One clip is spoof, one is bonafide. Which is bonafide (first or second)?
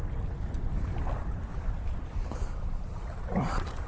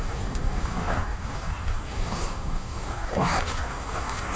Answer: first